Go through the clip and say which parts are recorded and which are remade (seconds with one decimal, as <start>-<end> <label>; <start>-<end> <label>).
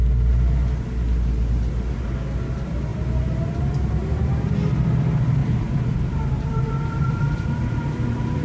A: 0.0-4.0 recorded; 4.0-4.5 remade; 4.5-5.4 recorded; 5.4-7.2 remade; 7.2-8.4 recorded